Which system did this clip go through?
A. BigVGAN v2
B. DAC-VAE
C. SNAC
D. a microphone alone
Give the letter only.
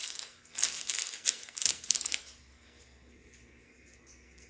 C